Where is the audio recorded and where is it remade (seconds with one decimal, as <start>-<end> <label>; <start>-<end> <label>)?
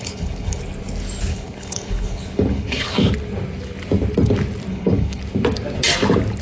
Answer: 0.0-0.6 remade; 0.6-1.3 recorded; 1.3-3.1 remade; 3.1-4.7 recorded; 4.7-5.2 remade; 5.2-6.4 recorded